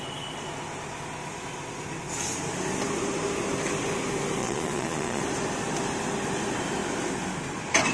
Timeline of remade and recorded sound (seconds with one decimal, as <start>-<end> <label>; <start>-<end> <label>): 0.0-4.4 recorded; 4.4-5.2 remade; 5.2-7.9 recorded